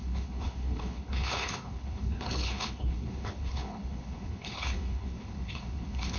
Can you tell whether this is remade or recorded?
remade